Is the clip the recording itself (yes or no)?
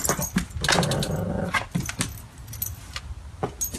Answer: yes